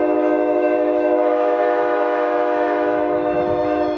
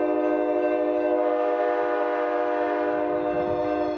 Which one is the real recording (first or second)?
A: second